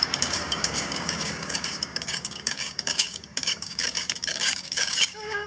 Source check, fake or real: fake